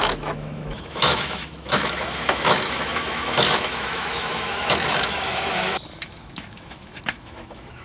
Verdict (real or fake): fake